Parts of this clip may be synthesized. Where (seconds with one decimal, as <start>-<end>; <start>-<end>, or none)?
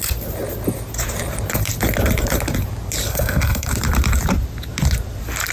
3.1-3.7